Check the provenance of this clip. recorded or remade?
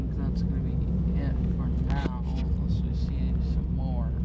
recorded